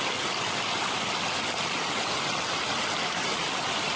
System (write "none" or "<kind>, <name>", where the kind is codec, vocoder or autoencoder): none